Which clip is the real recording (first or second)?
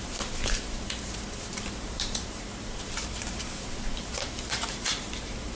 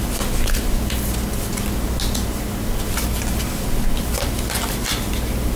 second